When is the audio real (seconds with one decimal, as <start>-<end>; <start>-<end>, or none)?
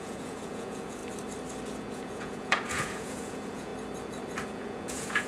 1.0-1.8; 3.7-4.5